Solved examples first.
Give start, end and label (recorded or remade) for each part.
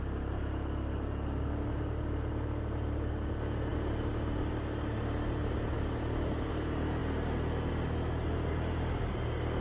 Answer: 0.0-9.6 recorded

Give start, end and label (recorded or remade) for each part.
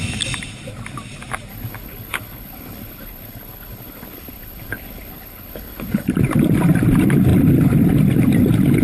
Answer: 0.0-1.5 recorded; 1.5-6.1 remade; 6.1-8.8 recorded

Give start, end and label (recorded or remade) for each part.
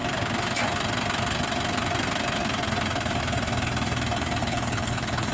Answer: 0.0-4.4 recorded; 4.4-5.3 remade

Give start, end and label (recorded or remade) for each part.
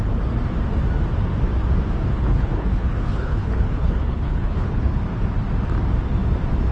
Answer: 0.0-2.1 recorded; 2.1-5.0 remade; 5.0-6.7 recorded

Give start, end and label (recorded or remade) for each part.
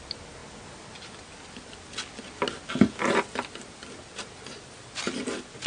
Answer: 0.0-5.7 recorded